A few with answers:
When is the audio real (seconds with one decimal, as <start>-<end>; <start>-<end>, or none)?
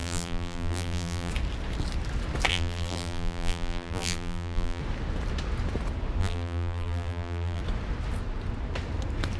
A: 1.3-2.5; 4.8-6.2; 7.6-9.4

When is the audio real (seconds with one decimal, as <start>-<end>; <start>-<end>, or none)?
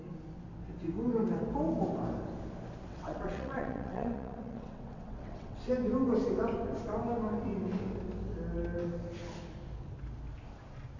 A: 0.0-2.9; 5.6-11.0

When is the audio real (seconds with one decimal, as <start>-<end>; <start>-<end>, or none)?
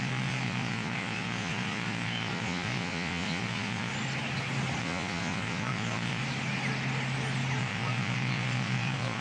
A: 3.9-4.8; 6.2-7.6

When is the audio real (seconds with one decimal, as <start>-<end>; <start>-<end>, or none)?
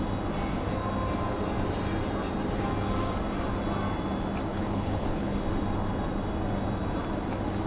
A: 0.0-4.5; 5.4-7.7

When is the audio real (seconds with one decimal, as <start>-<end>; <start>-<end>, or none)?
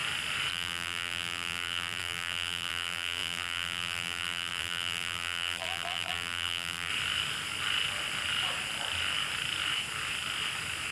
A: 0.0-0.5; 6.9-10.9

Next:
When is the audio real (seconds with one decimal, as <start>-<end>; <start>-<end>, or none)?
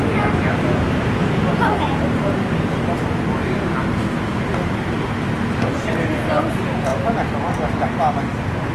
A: 0.0-8.7